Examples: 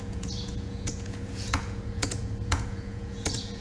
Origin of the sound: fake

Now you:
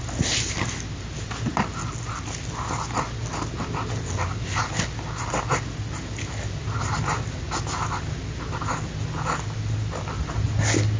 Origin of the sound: real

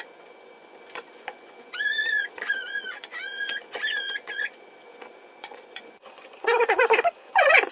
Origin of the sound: fake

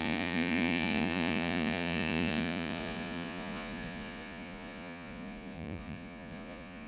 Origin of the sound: fake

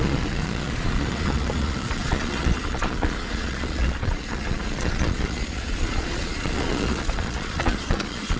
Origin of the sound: fake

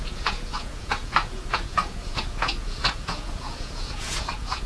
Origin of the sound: fake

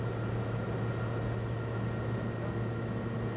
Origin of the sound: real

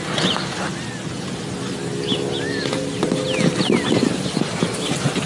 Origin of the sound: real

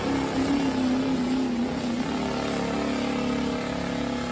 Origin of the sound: real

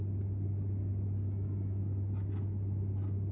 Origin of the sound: real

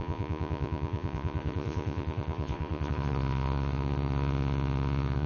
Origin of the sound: fake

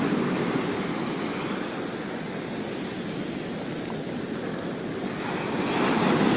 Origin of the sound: real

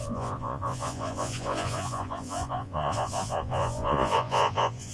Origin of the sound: fake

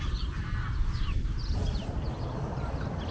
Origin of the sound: real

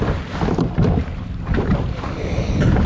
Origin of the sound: real